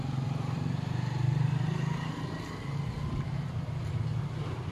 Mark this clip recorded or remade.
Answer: recorded